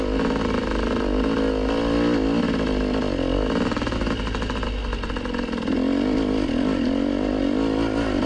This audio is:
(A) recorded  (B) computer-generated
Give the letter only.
A